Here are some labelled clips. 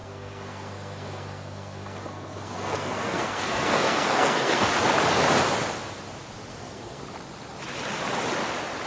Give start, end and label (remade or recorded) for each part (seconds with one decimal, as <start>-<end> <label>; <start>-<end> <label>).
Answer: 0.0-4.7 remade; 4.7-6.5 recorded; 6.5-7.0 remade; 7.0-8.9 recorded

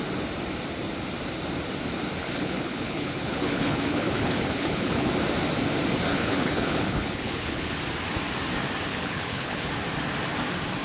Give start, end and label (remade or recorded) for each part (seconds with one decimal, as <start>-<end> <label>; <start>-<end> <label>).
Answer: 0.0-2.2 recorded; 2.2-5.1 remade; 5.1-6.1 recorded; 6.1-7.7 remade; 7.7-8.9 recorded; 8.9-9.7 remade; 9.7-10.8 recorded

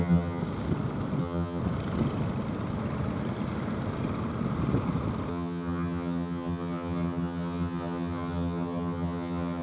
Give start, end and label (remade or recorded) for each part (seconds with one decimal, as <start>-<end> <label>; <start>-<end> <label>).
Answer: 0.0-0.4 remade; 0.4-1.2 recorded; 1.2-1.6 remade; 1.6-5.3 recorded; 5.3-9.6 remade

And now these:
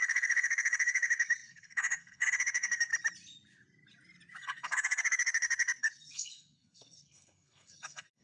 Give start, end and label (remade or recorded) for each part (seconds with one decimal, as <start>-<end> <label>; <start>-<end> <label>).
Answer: 0.0-2.9 remade; 2.9-4.4 recorded; 4.4-8.2 remade

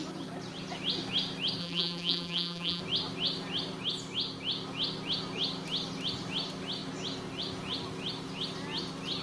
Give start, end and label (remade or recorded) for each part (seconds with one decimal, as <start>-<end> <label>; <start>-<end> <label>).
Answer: 0.0-1.6 recorded; 1.6-2.8 remade; 2.8-9.2 recorded

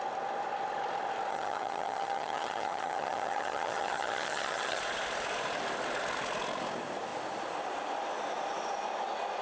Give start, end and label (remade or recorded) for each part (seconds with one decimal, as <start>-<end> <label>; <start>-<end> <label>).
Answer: 0.0-1.3 recorded; 1.3-4.8 remade; 4.8-9.4 recorded